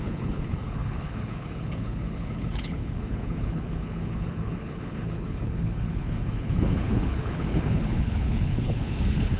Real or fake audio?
fake